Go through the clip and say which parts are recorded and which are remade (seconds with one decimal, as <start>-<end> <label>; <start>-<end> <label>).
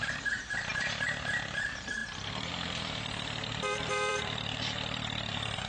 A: 0.0-5.7 remade